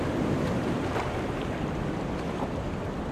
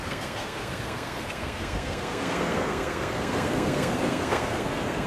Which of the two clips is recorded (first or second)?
first